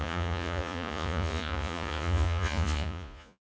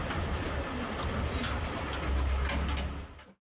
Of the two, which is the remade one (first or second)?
first